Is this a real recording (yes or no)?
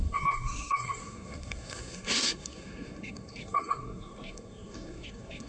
no